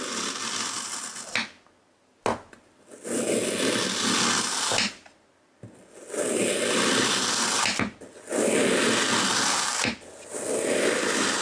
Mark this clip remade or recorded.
recorded